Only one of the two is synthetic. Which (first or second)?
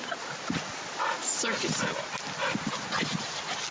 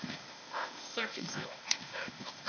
second